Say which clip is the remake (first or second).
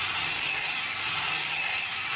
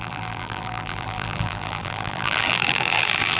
second